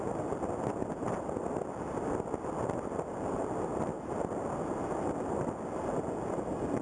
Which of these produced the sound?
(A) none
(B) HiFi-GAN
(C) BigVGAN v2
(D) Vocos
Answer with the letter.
A